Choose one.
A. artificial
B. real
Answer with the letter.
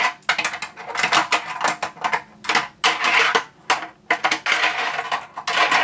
B